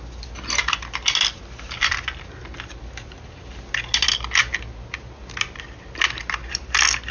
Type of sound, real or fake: real